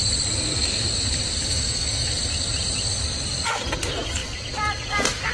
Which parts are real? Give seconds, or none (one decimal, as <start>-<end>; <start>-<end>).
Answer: 0.0-1.4; 2.1-5.3